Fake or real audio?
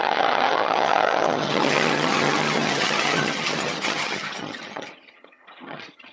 fake